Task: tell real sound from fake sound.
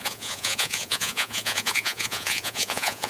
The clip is fake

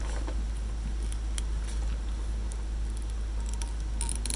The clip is real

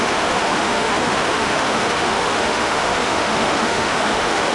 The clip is fake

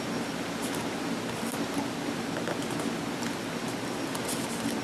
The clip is real